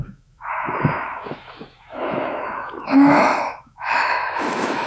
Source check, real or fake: fake